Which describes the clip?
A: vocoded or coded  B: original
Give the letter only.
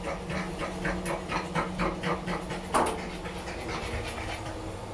B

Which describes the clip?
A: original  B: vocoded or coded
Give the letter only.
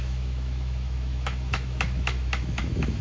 B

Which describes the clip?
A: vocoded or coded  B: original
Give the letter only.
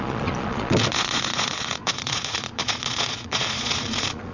A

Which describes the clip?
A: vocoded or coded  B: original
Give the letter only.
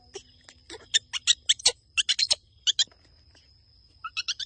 B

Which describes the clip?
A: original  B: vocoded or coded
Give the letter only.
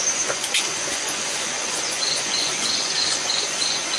B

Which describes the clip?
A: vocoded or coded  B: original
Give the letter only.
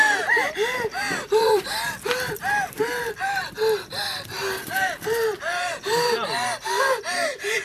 A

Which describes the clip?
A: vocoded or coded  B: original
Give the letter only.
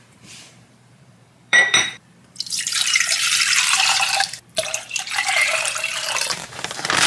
A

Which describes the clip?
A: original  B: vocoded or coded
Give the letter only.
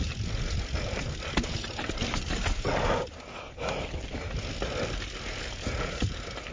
A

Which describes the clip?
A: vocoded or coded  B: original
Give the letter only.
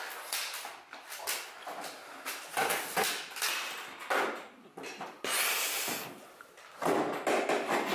B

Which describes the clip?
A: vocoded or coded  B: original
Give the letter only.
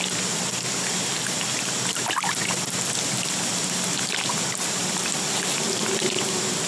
B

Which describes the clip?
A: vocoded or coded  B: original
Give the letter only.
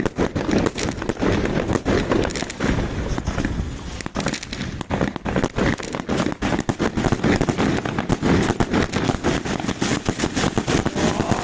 B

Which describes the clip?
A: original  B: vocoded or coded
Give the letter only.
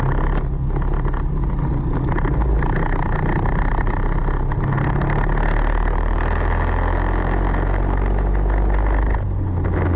A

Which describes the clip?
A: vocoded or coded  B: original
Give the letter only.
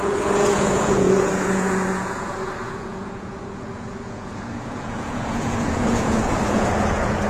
A